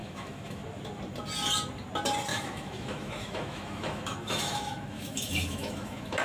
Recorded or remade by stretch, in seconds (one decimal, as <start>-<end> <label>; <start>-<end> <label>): 0.0-0.6 remade; 0.6-2.3 recorded; 2.3-6.2 remade